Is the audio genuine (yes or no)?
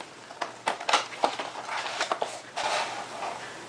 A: yes